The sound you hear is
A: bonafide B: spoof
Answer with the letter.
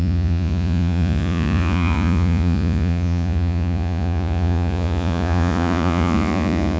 B